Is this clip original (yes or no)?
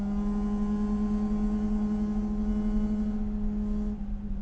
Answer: yes